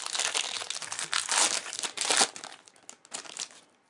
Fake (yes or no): no